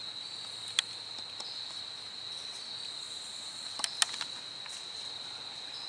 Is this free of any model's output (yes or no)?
yes